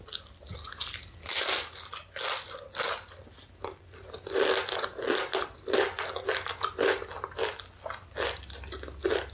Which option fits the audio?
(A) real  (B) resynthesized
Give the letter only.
A